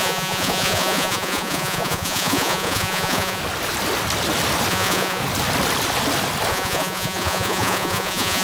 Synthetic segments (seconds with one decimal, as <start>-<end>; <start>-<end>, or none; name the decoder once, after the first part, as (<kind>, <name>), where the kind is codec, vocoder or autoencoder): 0.0-3.4 (vocoder, Vocos); 4.7-5.2; 6.5-8.4